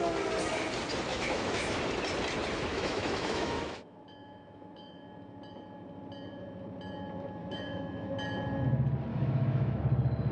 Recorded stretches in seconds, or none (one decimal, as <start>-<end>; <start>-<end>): 0.0-1.1; 1.8-2.7; 5.0-7.4; 8.1-9.1; 9.8-10.3